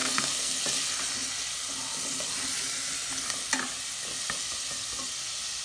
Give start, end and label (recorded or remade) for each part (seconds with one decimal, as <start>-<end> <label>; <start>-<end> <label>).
0.0-0.6 remade; 0.6-5.6 recorded